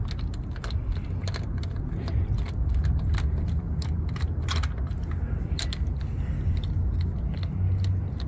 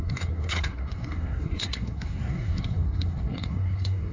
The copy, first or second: second